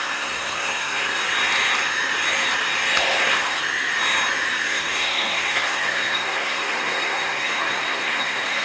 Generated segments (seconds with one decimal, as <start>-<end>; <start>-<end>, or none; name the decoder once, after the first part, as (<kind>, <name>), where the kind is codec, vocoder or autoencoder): 0.0-1.2 (codec, SNAC); 3.2-3.6; 4.6-8.6